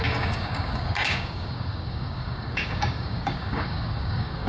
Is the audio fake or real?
fake